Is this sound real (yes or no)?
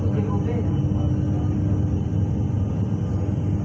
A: yes